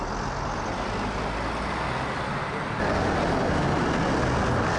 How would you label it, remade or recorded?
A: recorded